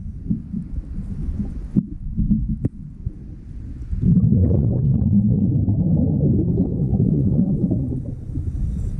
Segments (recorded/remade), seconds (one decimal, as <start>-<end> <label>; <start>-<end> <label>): 0.0-1.2 recorded; 1.2-2.1 remade; 2.1-4.3 recorded; 4.3-5.5 remade; 5.5-6.7 recorded; 6.7-8.1 remade; 8.1-9.0 recorded